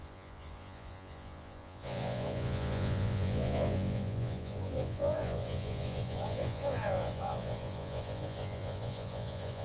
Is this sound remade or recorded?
remade